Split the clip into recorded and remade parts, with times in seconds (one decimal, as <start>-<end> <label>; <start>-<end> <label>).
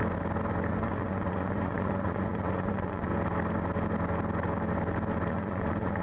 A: 0.0-0.7 recorded; 0.7-3.1 remade; 3.1-5.3 recorded; 5.3-6.0 remade